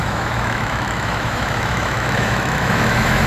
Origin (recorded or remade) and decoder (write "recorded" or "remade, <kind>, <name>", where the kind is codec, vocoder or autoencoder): remade, autoencoder, DAC-VAE